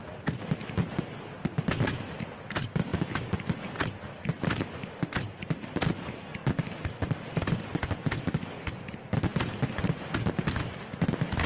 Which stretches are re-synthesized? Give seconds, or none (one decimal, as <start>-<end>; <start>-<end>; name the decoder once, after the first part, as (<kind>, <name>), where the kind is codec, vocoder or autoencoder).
none